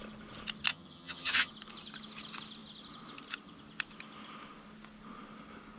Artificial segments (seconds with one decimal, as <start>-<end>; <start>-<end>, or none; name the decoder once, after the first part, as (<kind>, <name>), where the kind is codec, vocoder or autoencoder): 0.7-1.5 (vocoder, HiFi-GAN)